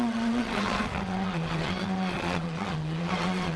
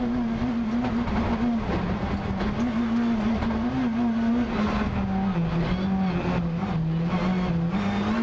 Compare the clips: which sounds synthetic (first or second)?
first